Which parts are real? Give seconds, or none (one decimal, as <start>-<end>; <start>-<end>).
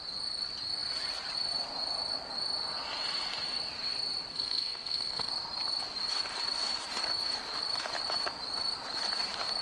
0.0-4.3; 5.3-9.6